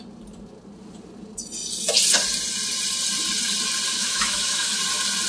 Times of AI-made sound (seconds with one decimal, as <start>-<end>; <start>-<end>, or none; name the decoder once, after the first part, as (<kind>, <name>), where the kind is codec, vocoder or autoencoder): 3.9-4.8 (autoencoder, DAC-VAE)